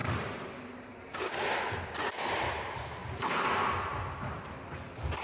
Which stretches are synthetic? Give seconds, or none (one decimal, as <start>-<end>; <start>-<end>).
none